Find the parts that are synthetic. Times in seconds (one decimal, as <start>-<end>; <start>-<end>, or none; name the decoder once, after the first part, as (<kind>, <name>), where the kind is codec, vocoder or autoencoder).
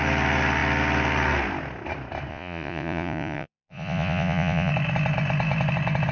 2.3-4.7 (vocoder, Vocos)